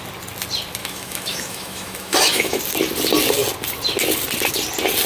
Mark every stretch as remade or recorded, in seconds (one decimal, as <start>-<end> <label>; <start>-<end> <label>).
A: 0.0-0.8 recorded; 0.8-2.6 remade; 2.6-5.1 recorded

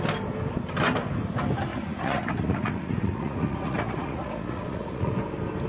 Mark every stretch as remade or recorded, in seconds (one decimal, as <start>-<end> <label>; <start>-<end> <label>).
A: 0.0-1.7 recorded; 1.7-5.1 remade; 5.1-5.7 recorded